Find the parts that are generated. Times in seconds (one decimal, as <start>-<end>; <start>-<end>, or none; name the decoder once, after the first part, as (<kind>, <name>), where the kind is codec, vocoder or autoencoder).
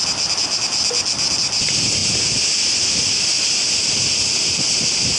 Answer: none